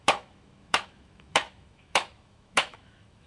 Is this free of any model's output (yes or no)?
no